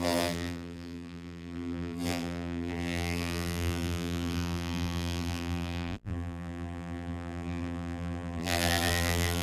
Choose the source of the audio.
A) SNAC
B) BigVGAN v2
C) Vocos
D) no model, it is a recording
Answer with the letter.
B